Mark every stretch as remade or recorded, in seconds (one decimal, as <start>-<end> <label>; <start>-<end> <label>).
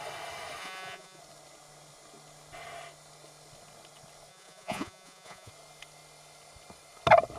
0.0-0.6 recorded; 0.6-1.2 remade; 1.2-4.3 recorded; 4.3-5.5 remade; 5.5-7.4 recorded